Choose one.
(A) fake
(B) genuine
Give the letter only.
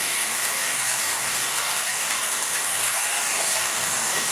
A